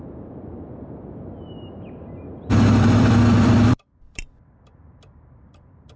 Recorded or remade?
remade